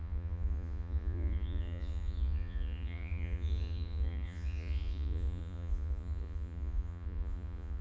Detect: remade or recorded remade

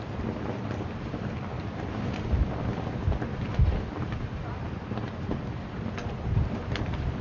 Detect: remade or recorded recorded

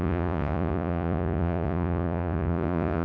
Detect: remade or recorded remade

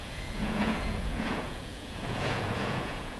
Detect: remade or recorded remade